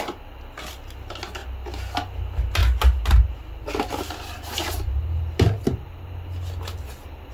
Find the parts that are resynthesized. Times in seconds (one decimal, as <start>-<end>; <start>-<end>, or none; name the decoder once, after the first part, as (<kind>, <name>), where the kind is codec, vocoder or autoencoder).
none